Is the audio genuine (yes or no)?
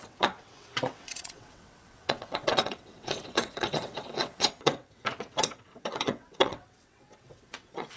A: no